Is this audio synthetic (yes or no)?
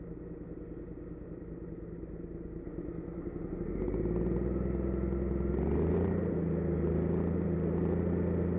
no